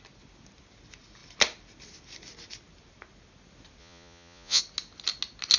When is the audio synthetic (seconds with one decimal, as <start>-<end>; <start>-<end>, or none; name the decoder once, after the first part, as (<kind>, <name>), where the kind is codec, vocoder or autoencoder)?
3.8-4.6 (vocoder, Vocos)